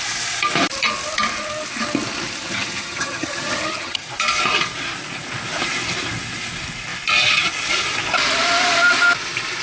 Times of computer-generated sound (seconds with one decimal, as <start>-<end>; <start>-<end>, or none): 2.4-4.1